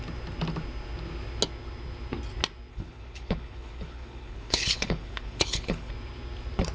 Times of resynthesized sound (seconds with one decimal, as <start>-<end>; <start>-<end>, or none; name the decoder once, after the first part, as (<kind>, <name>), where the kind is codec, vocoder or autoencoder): 2.7-5.9 (codec, HILCodec)